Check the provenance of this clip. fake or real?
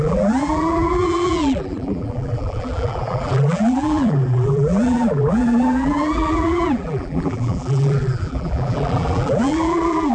fake